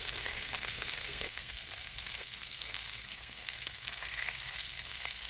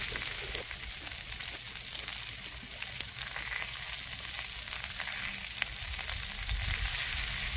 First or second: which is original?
second